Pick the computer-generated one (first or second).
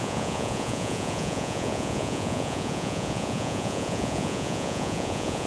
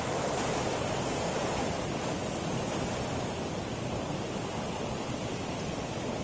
first